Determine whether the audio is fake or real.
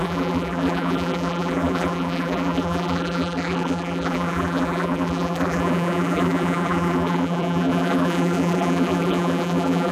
fake